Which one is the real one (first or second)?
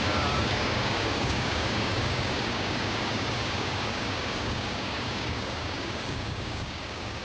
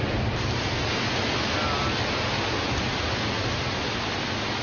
second